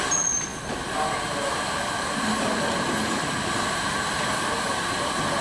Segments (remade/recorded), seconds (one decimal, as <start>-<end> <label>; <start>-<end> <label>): 0.0-5.4 recorded